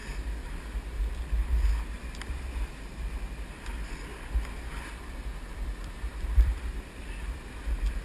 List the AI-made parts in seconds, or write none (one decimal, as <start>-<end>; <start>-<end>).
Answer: 1.8-8.0